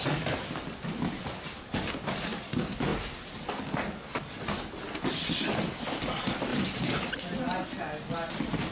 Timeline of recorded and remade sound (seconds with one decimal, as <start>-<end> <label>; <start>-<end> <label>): 0.0-6.5 recorded; 6.5-7.4 remade; 7.4-8.7 recorded